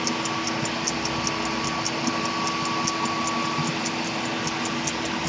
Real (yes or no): yes